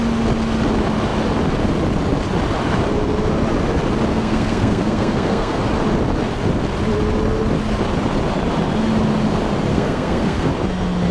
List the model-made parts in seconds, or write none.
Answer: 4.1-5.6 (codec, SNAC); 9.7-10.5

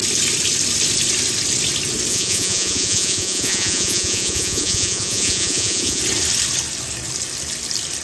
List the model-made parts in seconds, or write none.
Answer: 2.1-6.0 (vocoder, Vocos)